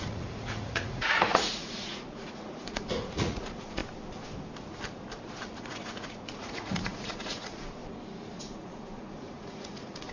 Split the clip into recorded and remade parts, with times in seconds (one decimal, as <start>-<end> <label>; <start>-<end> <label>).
0.0-3.8 remade; 3.8-5.6 recorded; 5.6-7.8 remade; 7.8-8.4 recorded; 8.4-10.1 remade